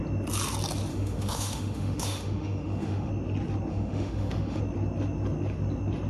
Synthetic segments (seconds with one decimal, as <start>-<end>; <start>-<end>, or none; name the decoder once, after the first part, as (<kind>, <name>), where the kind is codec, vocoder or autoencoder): 0.9-3.1 (autoencoder, DAC-VAE); 3.7-4.6